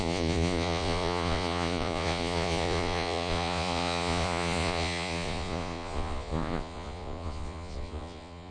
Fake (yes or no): yes